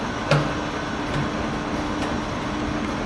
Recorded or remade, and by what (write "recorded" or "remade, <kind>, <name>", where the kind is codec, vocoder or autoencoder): recorded